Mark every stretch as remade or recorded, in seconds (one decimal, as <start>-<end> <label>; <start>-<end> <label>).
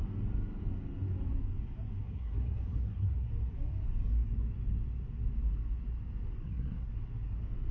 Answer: 0.0-2.0 recorded; 2.0-3.3 remade; 3.3-6.4 recorded; 6.4-6.9 remade; 6.9-7.7 recorded